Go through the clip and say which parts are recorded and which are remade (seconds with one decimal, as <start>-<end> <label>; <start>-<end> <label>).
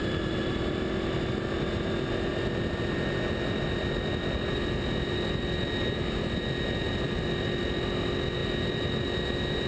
0.0-9.7 recorded